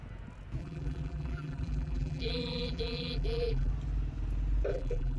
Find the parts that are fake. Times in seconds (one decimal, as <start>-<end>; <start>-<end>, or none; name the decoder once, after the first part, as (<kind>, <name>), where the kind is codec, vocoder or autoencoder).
0.6-3.7 (vocoder, BigVGAN v2); 4.7-5.2